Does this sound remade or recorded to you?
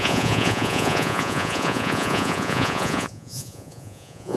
remade